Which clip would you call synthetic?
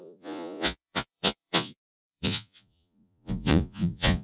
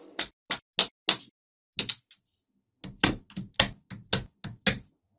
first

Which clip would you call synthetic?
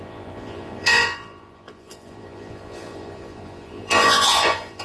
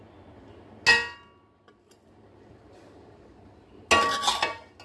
first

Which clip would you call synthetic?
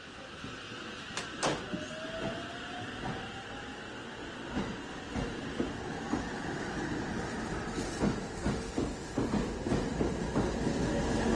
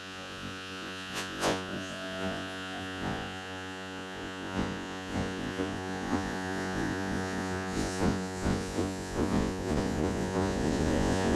second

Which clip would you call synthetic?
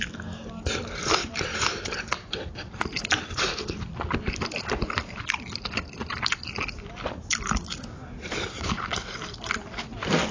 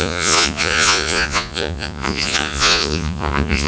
second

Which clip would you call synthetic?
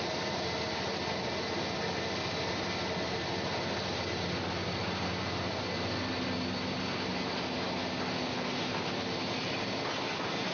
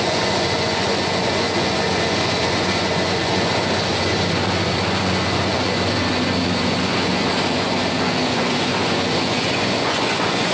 second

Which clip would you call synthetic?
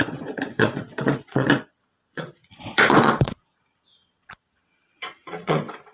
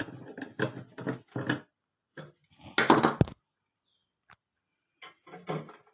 first